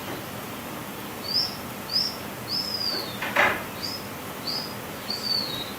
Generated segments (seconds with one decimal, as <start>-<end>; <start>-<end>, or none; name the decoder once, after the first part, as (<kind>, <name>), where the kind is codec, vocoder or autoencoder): 0.0-0.5 (vocoder, BigVGAN v2)